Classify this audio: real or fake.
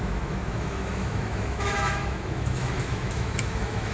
fake